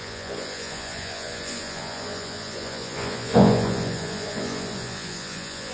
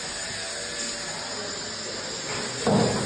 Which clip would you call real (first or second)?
second